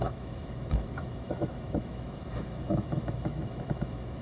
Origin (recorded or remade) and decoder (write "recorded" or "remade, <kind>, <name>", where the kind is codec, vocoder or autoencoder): remade, autoencoder, DAC-VAE